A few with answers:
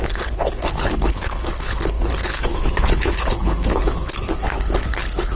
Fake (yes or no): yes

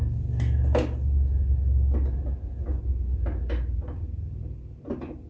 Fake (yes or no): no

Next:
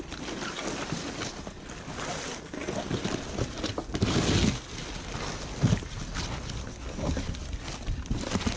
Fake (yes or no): no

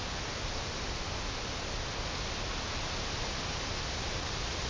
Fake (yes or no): no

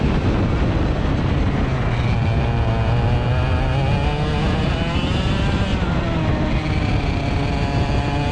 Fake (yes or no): no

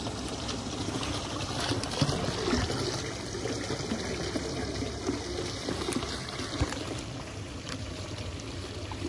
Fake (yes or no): no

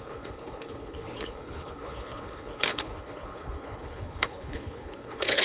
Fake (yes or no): yes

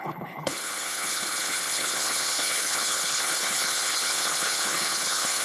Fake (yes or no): yes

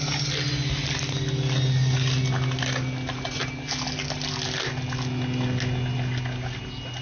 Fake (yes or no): no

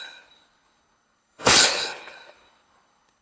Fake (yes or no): yes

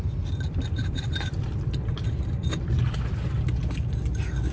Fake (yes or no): no